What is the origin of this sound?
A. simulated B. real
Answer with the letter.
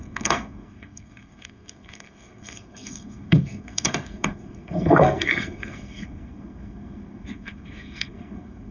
A